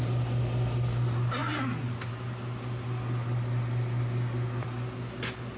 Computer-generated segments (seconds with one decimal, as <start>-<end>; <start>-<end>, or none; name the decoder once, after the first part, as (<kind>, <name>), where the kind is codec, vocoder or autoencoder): none